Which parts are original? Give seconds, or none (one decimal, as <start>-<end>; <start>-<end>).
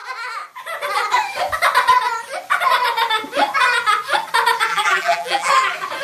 0.0-4.7; 5.5-6.0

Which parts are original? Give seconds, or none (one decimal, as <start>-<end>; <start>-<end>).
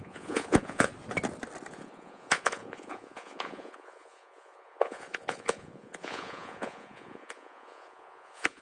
0.9-1.7